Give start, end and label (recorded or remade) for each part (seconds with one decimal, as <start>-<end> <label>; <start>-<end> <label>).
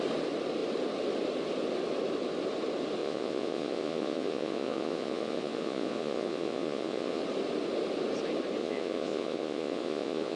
0.0-3.0 recorded; 3.0-7.2 remade; 7.2-8.6 recorded; 8.6-10.4 remade